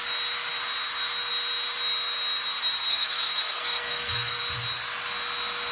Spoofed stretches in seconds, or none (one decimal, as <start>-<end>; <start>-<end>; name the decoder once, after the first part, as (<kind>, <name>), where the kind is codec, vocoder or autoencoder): 2.9-4.4 (codec, SNAC)